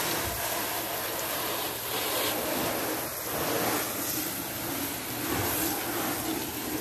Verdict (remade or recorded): recorded